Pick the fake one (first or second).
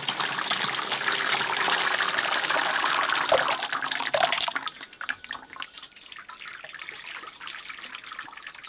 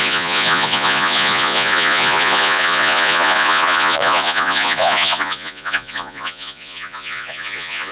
second